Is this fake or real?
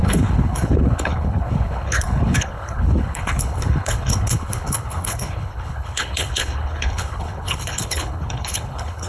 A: fake